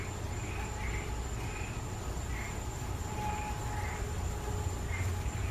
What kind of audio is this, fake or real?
real